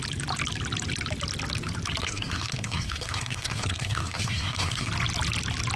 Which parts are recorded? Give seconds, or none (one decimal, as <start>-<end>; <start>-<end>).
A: 0.0-2.0; 4.9-5.8